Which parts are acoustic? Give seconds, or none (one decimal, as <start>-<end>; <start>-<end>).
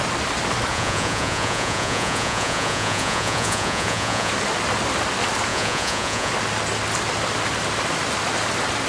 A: 0.0-0.7; 4.3-5.5; 6.3-8.9